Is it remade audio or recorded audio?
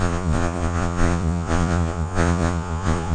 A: remade